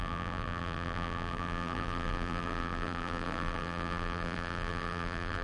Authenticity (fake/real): fake